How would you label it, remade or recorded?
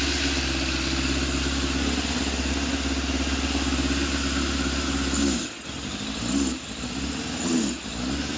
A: recorded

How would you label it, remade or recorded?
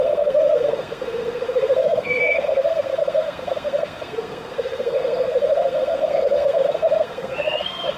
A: remade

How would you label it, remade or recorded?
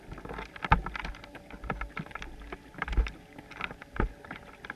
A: recorded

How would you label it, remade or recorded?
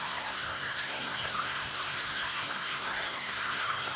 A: remade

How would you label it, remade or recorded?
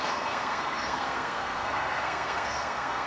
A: remade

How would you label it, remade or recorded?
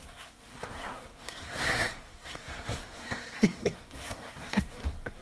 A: remade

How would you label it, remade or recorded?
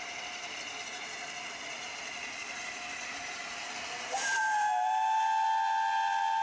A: recorded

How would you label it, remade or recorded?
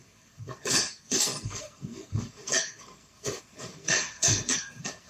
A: remade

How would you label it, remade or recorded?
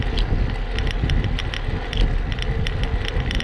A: recorded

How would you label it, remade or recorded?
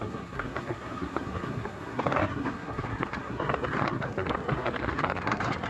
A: remade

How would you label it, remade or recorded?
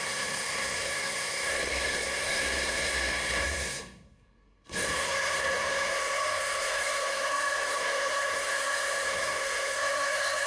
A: remade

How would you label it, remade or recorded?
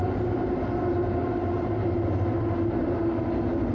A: recorded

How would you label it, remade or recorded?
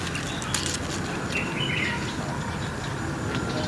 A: recorded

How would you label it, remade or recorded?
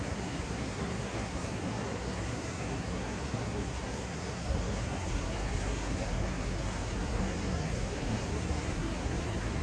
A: remade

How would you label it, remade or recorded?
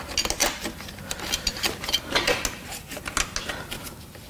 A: recorded